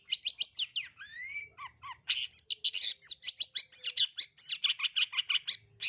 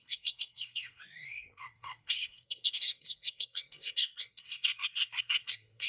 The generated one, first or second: second